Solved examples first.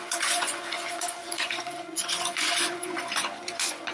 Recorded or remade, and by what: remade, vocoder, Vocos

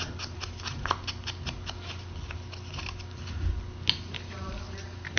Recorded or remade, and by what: recorded